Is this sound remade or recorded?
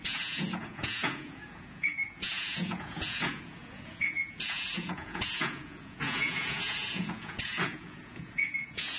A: remade